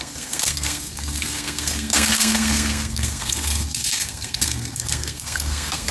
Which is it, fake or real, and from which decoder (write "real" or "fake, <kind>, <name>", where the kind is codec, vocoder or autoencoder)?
fake, codec, SNAC